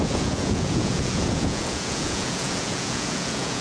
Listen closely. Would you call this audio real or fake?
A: fake